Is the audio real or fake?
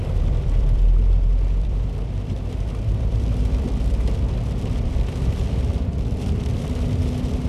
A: fake